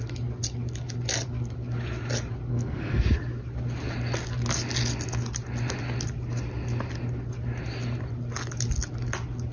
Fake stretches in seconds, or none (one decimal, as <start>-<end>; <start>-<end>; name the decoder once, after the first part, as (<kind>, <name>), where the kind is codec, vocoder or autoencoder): 2.5-3.0 (codec, SNAC)